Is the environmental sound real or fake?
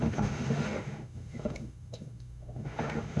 fake